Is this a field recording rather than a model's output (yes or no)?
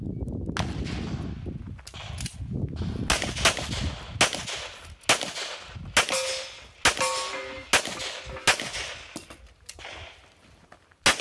yes